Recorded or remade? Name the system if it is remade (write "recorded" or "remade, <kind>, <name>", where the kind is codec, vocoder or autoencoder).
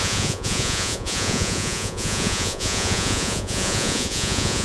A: remade, vocoder, Vocos